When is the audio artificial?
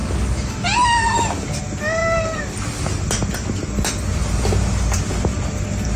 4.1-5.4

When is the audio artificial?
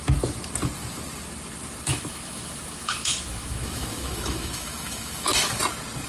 1.9-5.6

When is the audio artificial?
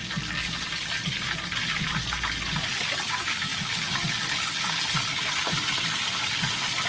0.0-1.1; 3.5-5.0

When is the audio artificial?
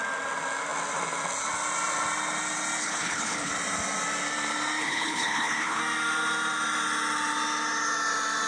2.8-3.5; 4.8-5.8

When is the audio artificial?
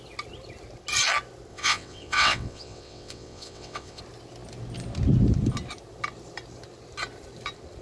1.5-4.0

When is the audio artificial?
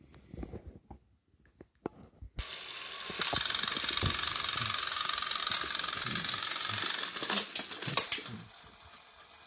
none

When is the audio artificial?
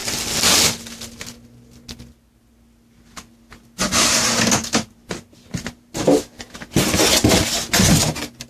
none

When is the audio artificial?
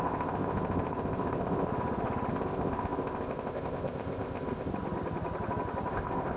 0.0-1.7; 2.3-4.7; 5.9-6.4